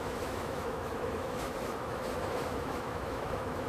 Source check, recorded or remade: remade